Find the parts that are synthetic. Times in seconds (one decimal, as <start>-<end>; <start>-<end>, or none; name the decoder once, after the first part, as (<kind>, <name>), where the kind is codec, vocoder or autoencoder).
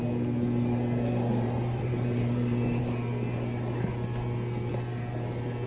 1.3-2.8 (vocoder, BigVGAN v2)